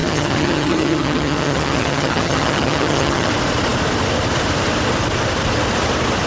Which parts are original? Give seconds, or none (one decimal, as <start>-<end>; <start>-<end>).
3.3-6.3